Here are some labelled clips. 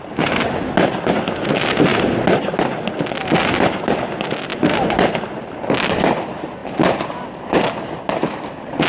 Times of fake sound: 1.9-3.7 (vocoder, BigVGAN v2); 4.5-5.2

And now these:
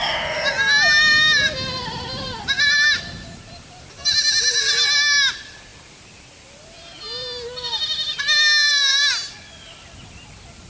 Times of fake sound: 1.8-4.7 (vocoder, BigVGAN v2)

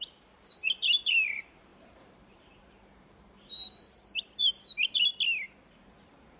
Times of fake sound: 0.0-5.1 (vocoder, BigVGAN v2); 5.8-6.4